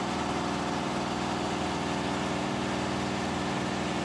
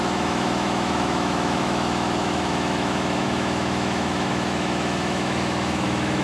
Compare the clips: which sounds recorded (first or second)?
first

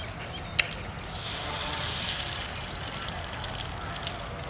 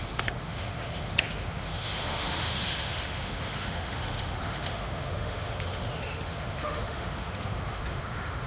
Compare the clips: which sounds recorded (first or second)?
first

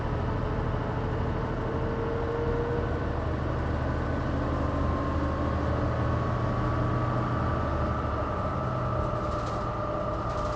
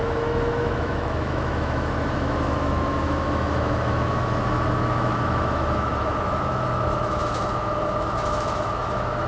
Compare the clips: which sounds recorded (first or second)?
first